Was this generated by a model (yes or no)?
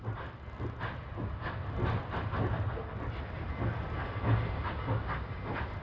no